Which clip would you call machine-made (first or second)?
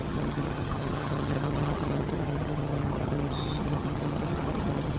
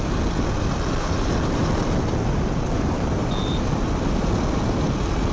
first